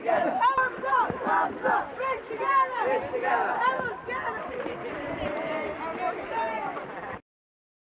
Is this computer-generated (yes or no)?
no